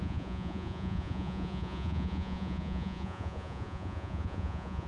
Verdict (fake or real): fake